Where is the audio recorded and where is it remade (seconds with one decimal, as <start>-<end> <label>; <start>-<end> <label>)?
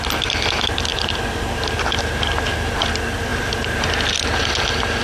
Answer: 0.0-3.3 recorded; 3.3-3.9 remade; 3.9-5.0 recorded